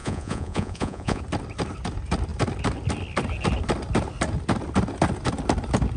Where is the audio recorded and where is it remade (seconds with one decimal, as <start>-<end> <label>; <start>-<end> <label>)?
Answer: 0.0-1.2 remade; 1.2-6.0 recorded